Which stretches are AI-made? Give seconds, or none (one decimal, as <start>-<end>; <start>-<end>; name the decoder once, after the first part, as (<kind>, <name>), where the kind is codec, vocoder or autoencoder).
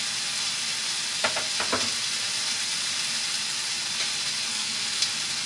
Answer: 4.5-5.0 (codec, SNAC)